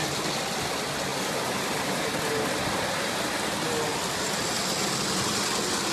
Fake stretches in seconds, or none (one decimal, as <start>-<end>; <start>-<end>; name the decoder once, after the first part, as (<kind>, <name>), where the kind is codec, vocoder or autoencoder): none